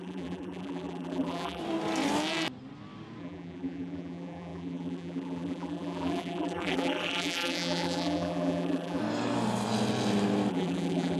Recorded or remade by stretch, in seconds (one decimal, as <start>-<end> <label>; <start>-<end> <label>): 0.0-1.6 remade; 1.6-3.2 recorded; 3.2-9.0 remade; 9.0-10.5 recorded; 10.5-11.2 remade